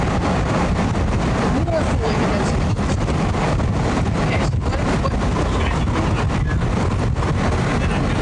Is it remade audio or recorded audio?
recorded